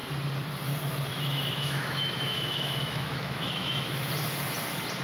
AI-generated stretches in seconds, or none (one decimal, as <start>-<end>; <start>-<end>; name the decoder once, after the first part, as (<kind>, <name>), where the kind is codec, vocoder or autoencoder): 1.1-4.1 (autoencoder, DAC-VAE)